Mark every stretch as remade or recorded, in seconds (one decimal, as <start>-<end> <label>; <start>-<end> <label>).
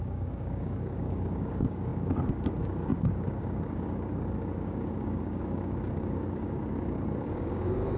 0.0-8.0 remade